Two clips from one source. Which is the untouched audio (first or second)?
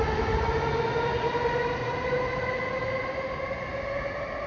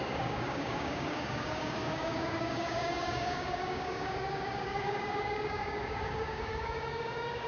first